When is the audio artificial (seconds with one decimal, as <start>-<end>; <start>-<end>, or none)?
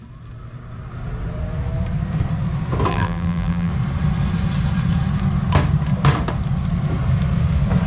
2.9-3.7